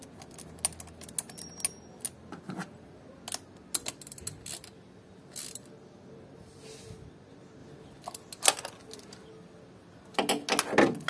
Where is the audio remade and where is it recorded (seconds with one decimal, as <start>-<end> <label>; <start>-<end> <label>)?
0.0-11.1 recorded